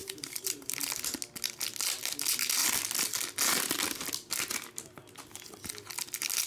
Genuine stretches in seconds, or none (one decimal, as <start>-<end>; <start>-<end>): 0.7-6.5